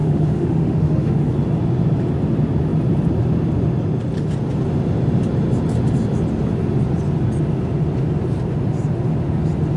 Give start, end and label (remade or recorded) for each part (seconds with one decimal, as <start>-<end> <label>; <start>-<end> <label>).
0.0-1.3 remade; 1.3-9.8 recorded